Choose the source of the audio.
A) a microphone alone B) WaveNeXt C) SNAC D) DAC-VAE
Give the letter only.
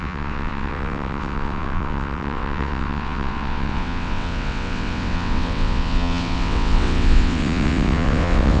B